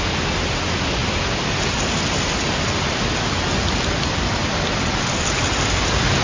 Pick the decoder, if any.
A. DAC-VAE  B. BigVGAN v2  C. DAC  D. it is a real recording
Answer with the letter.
D